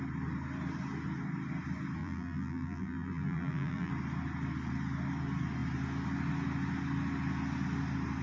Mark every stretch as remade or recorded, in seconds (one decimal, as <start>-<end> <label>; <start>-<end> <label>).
0.0-2.0 recorded; 2.0-3.9 remade; 3.9-8.2 recorded